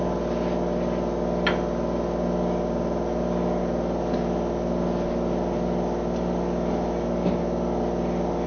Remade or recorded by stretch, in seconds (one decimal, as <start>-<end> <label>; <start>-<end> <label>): 0.0-8.5 recorded